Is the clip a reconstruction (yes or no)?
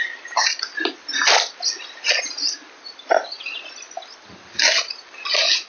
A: no